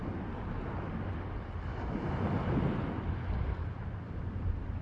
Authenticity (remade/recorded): recorded